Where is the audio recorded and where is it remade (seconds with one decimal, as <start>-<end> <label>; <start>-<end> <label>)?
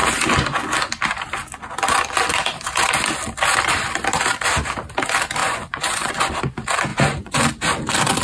0.0-5.4 recorded; 5.4-6.3 remade; 6.3-6.9 recorded; 6.9-7.4 remade; 7.4-8.2 recorded